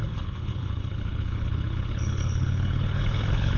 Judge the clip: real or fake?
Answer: fake